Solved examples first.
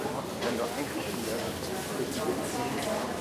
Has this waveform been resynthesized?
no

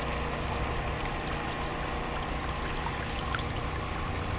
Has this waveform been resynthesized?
no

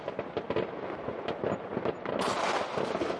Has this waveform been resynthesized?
no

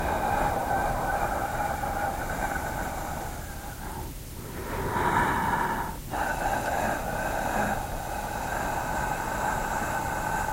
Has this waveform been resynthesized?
no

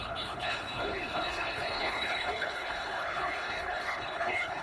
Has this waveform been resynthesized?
yes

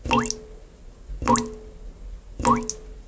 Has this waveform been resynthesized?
no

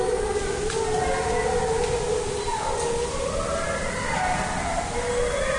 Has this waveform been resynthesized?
no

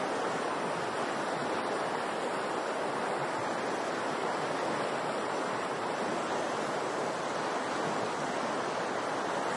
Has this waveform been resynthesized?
no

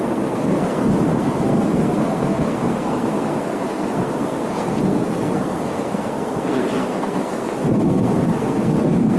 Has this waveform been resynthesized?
yes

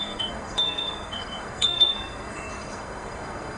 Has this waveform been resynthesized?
yes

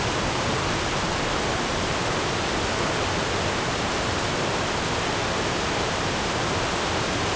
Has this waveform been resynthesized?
no